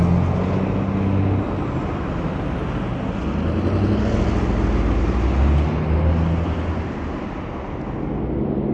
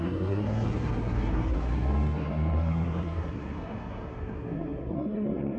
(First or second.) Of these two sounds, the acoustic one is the first